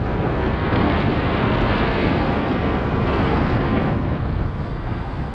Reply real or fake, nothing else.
fake